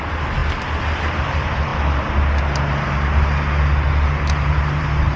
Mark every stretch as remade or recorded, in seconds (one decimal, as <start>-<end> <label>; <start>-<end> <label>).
0.0-5.2 recorded